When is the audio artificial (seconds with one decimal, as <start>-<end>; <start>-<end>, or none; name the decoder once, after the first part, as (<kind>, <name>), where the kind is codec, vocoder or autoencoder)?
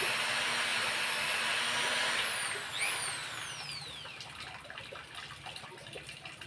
none